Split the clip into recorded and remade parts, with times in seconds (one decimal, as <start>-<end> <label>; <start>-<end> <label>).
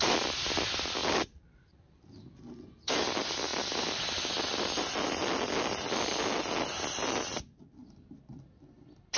0.0-9.2 recorded